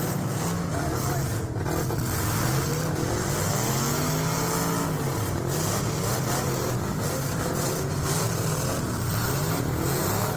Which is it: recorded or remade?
recorded